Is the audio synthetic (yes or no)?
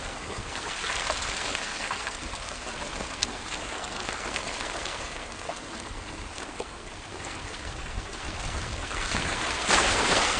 yes